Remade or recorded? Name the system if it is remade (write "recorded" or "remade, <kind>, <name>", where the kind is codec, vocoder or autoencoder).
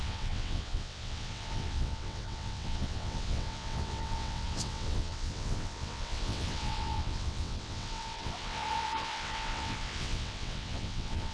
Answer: remade, vocoder, WaveNeXt